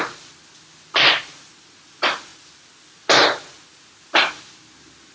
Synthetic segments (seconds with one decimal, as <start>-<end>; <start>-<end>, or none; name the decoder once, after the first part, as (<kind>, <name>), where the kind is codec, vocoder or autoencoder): none